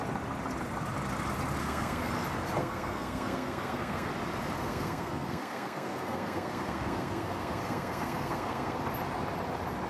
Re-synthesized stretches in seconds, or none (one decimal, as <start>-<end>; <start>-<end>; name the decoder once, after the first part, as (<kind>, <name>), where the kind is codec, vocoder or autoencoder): 1.6-2.1 (codec, SNAC); 2.6-4.1; 4.6-8.8

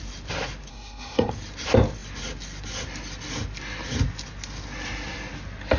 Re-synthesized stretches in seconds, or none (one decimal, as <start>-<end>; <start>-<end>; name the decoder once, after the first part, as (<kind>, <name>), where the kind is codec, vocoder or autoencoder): 0.7-1.3 (codec, SNAC)

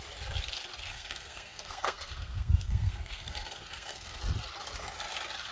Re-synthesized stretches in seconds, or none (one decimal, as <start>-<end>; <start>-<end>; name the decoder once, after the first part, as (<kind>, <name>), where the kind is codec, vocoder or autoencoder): 0.9-4.2 (codec, SNAC)

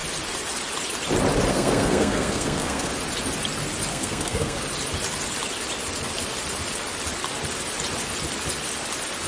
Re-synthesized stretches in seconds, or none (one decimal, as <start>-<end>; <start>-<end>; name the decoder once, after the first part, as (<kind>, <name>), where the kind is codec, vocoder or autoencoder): 1.5-2.9 (codec, SNAC); 3.9-4.6